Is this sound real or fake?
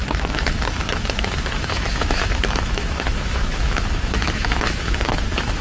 fake